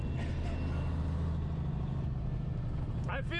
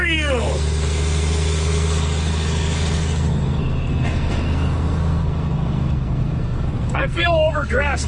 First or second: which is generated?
second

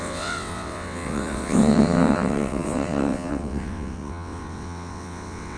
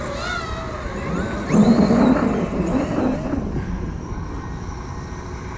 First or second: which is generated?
first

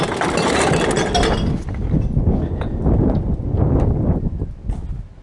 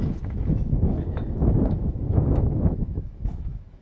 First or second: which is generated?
second